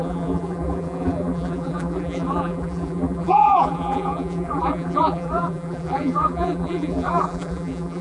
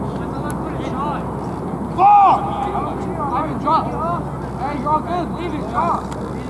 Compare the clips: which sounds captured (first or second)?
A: second